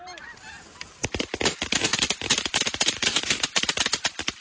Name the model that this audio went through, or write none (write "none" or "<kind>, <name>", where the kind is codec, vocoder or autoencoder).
none